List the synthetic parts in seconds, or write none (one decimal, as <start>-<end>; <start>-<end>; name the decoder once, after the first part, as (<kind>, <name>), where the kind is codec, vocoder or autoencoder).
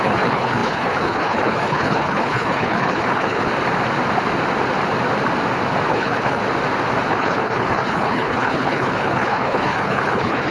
0.0-3.5 (codec, HILCodec); 5.9-6.4; 7.1-10.5